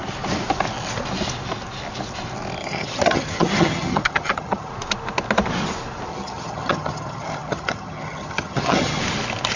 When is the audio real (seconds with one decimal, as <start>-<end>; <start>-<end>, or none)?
0.0-2.6; 4.7-6.1; 9.0-9.6